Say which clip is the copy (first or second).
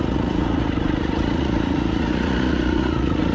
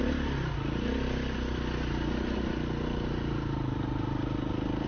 first